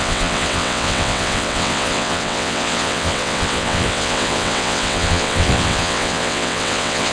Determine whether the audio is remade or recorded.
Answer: remade